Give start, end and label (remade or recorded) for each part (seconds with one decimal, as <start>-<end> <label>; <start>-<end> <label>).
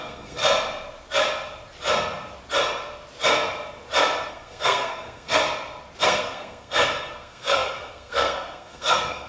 0.0-0.4 remade; 0.4-4.3 recorded; 4.3-5.4 remade; 5.4-6.0 recorded; 6.0-9.3 remade